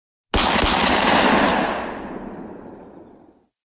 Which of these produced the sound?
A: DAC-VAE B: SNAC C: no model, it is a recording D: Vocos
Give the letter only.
C